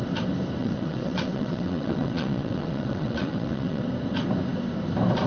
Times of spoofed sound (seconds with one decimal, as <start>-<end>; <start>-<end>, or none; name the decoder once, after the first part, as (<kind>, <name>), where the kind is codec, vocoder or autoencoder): 0.6-3.8 (vocoder, WaveNeXt)